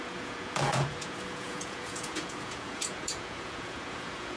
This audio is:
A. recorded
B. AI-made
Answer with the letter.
B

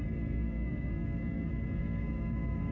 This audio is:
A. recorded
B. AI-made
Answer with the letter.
B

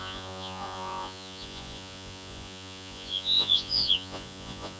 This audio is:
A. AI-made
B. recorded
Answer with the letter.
A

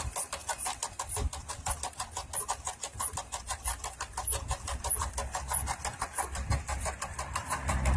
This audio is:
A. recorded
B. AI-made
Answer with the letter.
B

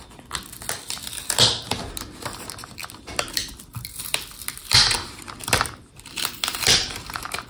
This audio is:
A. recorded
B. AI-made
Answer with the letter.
B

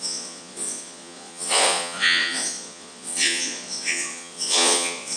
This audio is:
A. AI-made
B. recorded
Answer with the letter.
A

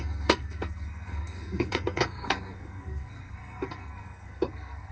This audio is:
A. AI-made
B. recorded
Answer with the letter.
A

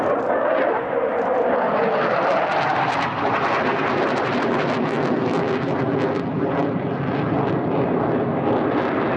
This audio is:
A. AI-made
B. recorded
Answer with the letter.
B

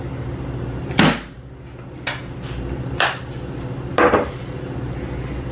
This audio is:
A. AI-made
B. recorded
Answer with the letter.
B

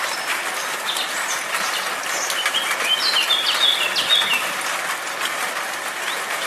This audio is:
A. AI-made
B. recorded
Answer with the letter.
B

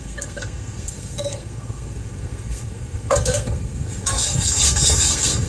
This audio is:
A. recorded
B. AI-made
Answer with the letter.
B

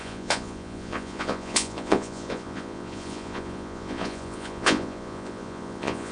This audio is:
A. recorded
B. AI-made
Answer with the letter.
B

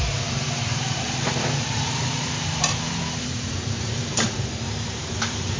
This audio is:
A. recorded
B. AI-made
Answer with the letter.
B